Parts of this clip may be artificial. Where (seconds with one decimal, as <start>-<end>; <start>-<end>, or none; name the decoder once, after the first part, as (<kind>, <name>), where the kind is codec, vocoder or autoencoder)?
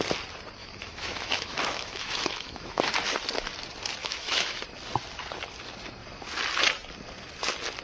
0.6-2.8 (autoencoder, DAC-VAE); 4.0-4.6